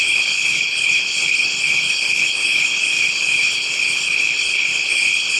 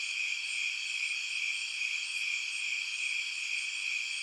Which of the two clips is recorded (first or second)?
second